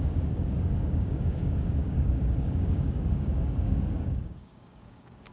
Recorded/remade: remade